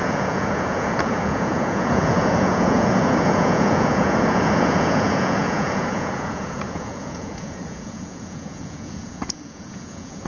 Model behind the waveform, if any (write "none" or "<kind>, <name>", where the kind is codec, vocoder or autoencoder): vocoder, Vocos